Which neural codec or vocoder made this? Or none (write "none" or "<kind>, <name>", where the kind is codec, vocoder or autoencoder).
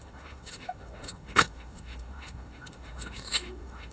autoencoder, DAC-VAE